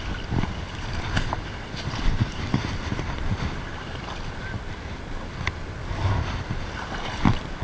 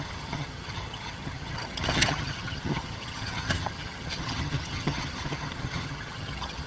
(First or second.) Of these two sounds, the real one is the first